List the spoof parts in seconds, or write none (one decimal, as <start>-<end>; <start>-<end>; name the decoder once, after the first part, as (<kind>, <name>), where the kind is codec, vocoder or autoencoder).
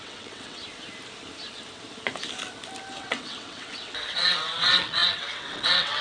0.0-0.6 (vocoder, WaveNeXt); 3.0-6.0